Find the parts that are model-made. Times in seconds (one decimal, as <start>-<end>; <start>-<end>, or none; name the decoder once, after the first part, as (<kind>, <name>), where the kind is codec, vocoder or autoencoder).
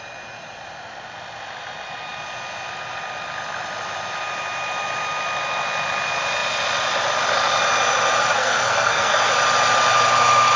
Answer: 8.3-9.3 (codec, SNAC)